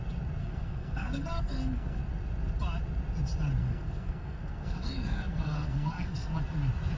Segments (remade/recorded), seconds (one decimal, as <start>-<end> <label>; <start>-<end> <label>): 0.0-0.4 recorded; 0.4-2.0 remade; 2.0-3.6 recorded; 3.6-6.4 remade; 6.4-7.0 recorded